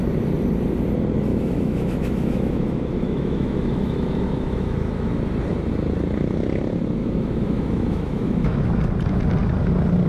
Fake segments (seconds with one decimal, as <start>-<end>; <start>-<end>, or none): 1.3-5.1; 7.0-8.8